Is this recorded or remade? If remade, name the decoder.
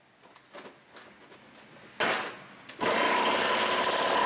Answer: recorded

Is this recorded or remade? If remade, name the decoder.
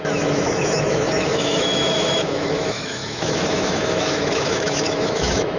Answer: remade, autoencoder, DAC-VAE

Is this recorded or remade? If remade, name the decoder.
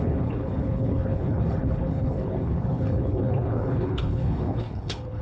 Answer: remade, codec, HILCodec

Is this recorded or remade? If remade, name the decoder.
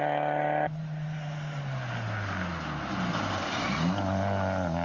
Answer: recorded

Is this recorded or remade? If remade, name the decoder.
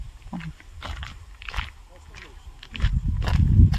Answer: recorded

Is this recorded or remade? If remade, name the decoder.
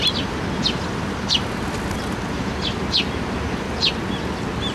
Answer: recorded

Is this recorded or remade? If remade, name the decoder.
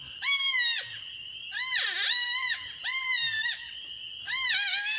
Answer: recorded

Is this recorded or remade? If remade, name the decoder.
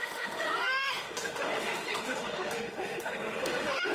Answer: remade, autoencoder, DAC-VAE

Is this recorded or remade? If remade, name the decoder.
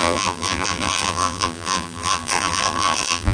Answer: remade, vocoder, BigVGAN v2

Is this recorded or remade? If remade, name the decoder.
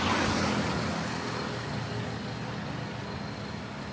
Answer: recorded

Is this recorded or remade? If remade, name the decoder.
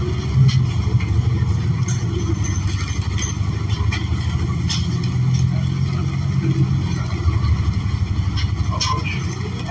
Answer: recorded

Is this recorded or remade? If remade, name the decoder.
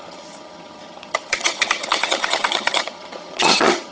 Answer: remade, vocoder, HiFi-GAN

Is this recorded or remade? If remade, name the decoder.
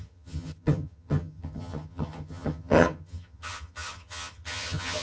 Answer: remade, vocoder, HiFi-GAN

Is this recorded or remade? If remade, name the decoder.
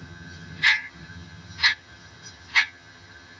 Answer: remade, vocoder, HiFi-GAN